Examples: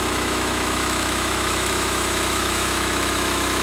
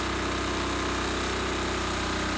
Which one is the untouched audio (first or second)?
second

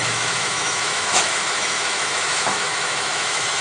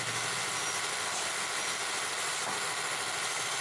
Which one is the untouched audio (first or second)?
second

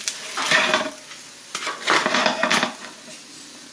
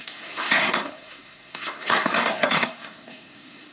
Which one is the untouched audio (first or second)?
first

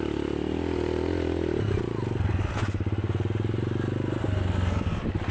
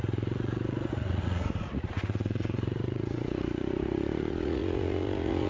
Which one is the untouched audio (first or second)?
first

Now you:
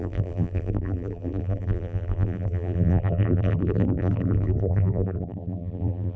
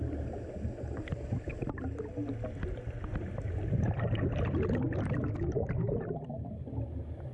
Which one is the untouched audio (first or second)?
second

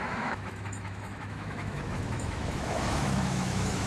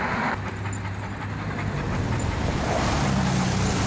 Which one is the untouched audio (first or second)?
second